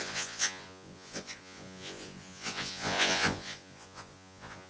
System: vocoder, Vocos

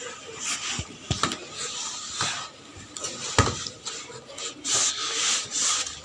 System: none